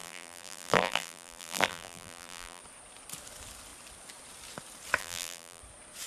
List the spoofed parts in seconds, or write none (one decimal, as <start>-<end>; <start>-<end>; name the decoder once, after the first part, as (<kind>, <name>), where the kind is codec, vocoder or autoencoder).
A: 0.0-2.6 (vocoder, BigVGAN v2); 5.0-5.6